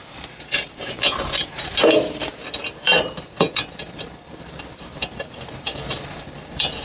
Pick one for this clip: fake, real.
fake